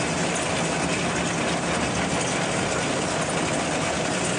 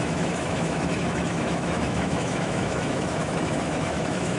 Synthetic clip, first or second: second